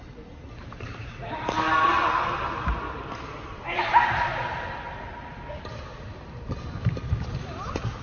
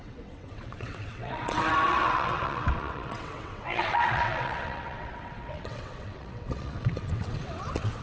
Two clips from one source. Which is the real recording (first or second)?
first